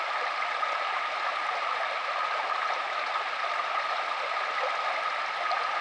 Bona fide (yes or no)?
yes